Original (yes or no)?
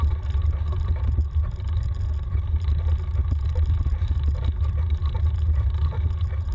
yes